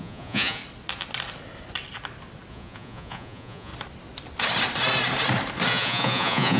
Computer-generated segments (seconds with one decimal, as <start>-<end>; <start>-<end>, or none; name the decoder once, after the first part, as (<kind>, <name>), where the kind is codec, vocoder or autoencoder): 0.0-0.6 (vocoder, Vocos); 2.5-3.7; 5.7-6.6